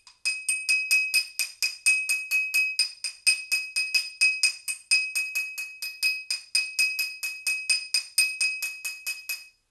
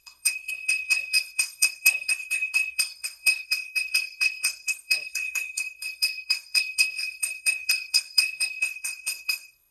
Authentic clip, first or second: first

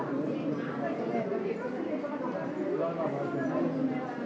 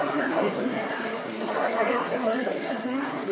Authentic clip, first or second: first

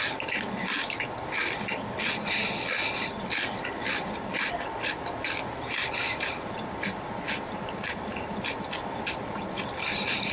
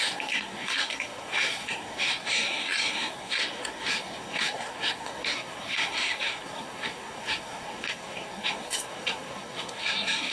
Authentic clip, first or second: first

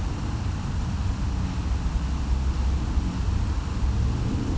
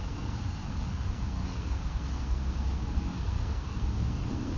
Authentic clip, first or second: first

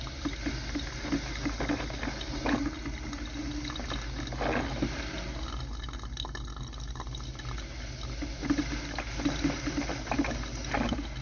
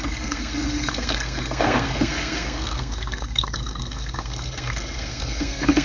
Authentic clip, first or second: first